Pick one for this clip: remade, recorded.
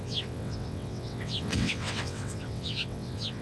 remade